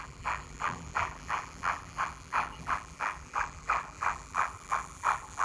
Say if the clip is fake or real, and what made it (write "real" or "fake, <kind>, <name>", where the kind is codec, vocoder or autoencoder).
fake, vocoder, BigVGAN v2